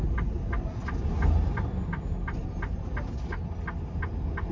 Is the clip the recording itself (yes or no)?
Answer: yes